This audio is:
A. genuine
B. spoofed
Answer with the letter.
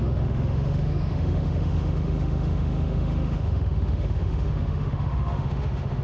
B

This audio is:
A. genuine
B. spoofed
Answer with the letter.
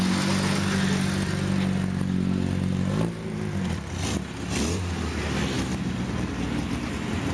A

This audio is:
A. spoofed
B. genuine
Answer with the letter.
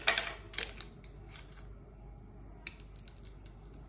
B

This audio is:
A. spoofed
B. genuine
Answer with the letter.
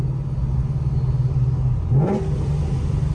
B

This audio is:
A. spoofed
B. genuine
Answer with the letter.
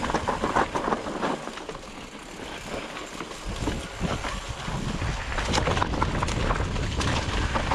B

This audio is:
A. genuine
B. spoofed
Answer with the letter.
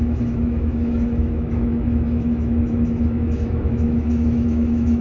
B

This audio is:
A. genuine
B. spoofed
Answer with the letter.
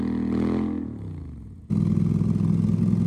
A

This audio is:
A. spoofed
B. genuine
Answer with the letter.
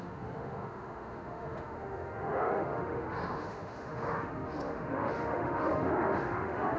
A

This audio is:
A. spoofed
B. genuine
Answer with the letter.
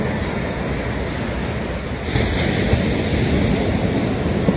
B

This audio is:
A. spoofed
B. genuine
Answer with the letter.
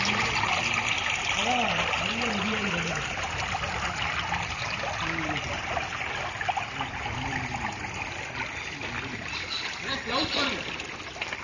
B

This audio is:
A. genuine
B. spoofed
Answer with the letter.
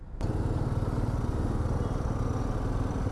A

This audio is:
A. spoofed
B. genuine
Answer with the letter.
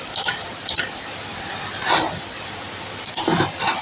B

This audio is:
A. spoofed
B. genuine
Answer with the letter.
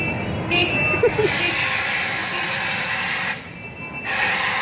B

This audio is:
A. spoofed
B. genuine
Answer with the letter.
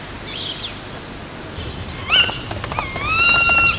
B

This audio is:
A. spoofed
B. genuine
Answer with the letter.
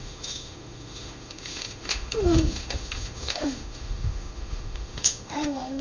A